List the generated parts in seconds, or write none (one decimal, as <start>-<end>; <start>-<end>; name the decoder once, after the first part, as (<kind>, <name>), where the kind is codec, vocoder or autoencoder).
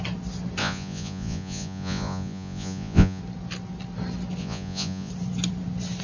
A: 0.6-3.2 (vocoder, Vocos); 4.4-5.1